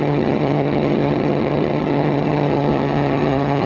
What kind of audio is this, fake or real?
fake